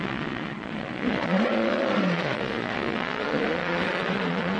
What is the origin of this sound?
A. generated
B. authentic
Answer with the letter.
A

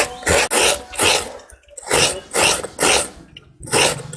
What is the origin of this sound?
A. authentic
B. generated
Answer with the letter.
A